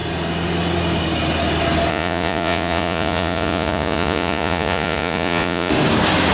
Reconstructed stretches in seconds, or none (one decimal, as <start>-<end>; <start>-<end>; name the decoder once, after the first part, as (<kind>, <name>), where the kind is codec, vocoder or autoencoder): 1.9-5.7 (vocoder, Vocos)